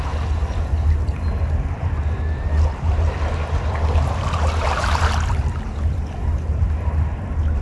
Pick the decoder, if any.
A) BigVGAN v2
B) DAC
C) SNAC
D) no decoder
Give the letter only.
D